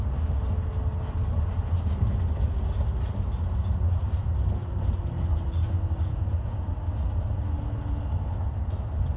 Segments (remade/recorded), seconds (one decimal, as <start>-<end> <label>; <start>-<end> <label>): 0.0-9.2 recorded